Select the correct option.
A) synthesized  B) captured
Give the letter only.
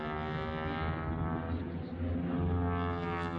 B